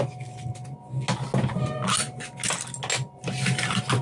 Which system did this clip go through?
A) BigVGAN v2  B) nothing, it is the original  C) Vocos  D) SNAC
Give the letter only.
B